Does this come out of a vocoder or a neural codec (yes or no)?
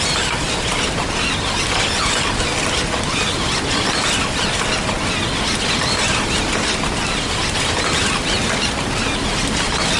no